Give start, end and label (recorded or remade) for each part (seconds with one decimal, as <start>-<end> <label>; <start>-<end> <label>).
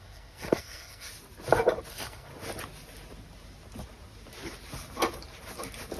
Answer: 0.0-1.1 remade; 1.1-1.9 recorded; 1.9-2.3 remade; 2.3-6.0 recorded